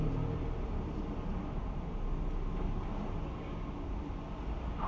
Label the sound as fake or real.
real